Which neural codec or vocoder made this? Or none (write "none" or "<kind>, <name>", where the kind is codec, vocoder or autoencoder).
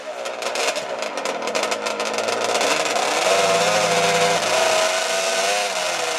none